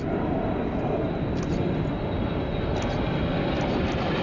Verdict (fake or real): real